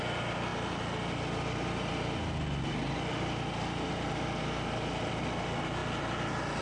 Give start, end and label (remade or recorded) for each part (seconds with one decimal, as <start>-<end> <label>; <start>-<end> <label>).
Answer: 0.0-6.6 recorded

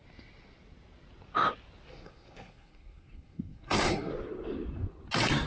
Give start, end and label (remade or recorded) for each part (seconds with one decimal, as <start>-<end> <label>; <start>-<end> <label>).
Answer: 0.0-1.9 recorded; 1.9-4.1 remade; 4.1-5.5 recorded